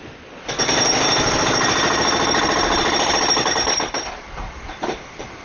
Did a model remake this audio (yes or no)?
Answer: yes